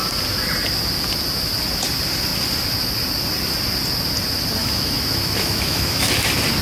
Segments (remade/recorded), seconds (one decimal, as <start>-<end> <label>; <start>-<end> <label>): 0.0-4.6 recorded; 4.6-6.1 remade; 6.1-6.6 recorded